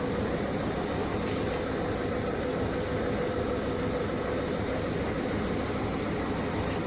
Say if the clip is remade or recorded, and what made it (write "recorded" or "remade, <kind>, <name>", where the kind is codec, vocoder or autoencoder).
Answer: recorded